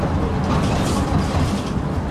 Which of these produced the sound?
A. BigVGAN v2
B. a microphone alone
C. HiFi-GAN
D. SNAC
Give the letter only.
B